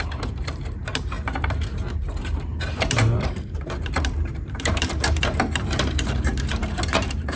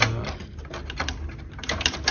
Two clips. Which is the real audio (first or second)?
second